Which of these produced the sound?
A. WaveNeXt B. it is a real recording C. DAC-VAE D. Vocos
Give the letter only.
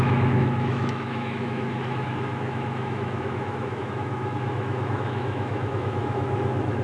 C